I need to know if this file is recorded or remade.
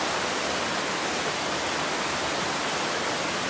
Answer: recorded